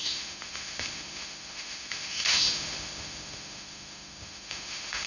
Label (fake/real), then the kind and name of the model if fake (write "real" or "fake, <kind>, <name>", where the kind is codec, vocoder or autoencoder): fake, autoencoder, DAC-VAE